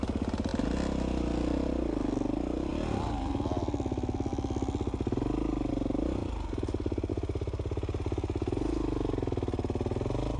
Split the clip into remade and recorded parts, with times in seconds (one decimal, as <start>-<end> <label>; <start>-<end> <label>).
0.0-10.4 recorded